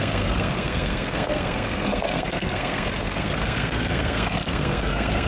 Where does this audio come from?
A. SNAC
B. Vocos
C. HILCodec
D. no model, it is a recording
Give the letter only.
A